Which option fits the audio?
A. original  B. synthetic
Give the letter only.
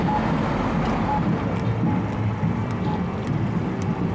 A